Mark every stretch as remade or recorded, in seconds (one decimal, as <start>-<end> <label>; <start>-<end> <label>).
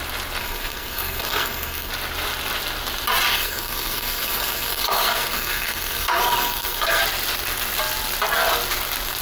0.0-0.4 recorded; 0.4-1.9 remade; 1.9-3.3 recorded; 3.3-7.0 remade; 7.0-9.2 recorded